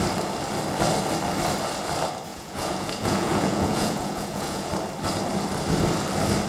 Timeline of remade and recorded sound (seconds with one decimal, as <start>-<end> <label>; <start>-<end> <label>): 0.0-2.3 recorded; 2.3-4.7 remade; 4.7-6.5 recorded